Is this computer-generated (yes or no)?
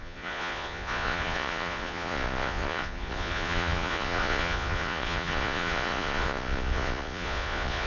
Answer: yes